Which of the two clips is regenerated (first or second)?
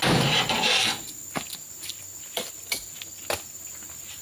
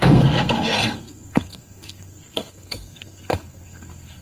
second